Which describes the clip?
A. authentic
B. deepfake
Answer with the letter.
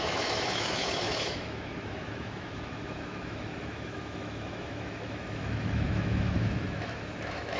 B